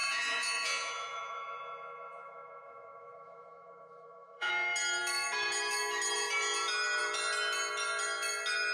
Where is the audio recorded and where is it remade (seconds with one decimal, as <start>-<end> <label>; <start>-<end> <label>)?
0.0-4.5 remade; 4.5-8.7 recorded

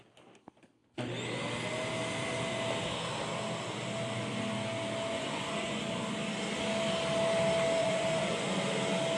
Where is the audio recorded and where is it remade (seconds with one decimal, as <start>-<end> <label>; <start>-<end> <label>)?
0.0-5.1 recorded; 5.1-5.8 remade; 5.8-7.8 recorded; 7.8-8.6 remade; 8.6-9.2 recorded